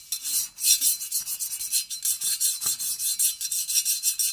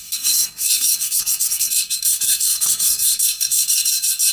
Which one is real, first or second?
first